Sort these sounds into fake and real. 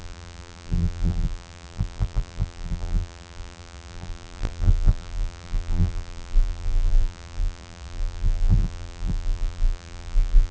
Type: fake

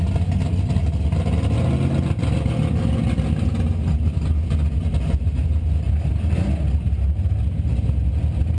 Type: real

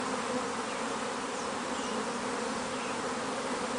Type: real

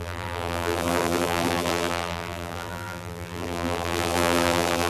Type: fake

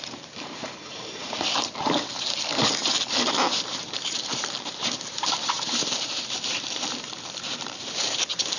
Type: fake